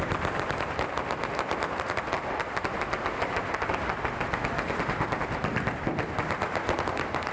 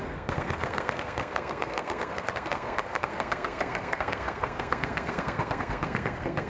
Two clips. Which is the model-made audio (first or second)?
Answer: second